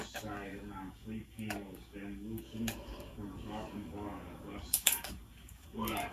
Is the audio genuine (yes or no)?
no